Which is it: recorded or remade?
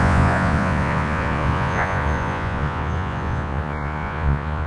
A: remade